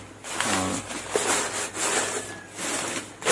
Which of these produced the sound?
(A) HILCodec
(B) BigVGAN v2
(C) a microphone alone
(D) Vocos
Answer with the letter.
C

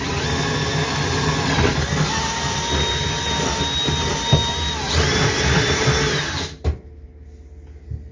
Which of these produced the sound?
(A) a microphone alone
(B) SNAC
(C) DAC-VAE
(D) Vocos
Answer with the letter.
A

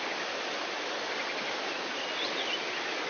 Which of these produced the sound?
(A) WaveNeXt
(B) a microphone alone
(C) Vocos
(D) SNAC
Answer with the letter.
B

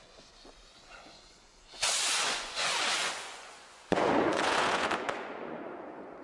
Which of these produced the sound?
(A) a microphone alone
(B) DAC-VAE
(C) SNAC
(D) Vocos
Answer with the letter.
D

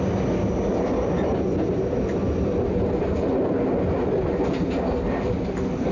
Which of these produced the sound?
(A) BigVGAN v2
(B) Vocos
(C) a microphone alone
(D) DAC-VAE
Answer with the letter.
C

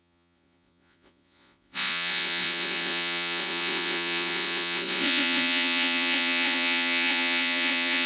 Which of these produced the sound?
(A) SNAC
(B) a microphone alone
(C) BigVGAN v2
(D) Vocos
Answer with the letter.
D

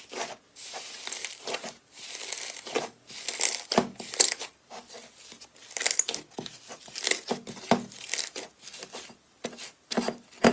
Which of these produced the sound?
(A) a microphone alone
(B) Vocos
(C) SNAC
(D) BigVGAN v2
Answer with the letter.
A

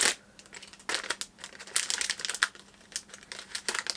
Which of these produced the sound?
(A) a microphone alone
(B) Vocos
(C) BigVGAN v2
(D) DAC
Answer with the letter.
A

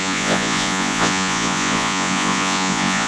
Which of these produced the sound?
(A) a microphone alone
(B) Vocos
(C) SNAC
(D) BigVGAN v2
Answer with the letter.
B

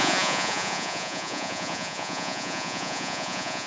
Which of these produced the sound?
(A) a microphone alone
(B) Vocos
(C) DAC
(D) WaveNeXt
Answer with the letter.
B